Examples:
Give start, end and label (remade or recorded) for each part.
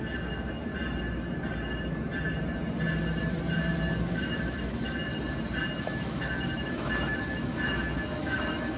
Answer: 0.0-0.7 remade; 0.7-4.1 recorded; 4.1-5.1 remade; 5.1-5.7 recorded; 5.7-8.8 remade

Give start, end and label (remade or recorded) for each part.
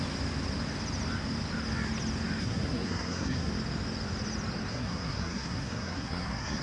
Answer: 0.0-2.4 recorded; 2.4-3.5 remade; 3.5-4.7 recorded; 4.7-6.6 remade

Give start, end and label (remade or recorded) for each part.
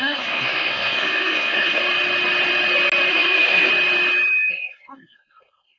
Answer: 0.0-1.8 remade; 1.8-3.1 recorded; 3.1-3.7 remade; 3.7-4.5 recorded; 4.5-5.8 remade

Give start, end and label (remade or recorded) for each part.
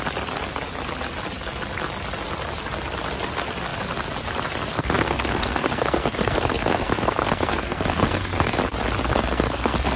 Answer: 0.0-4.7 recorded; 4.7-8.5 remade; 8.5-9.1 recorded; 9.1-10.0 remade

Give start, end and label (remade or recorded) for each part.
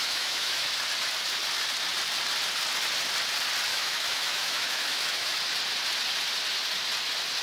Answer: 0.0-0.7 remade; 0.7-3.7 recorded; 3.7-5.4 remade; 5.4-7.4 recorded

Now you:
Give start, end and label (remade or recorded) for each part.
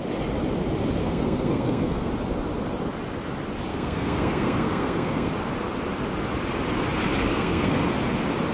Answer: 0.0-1.0 recorded; 1.0-2.1 remade; 2.1-3.7 recorded; 3.7-5.3 remade; 5.3-7.3 recorded; 7.3-7.8 remade; 7.8-8.5 recorded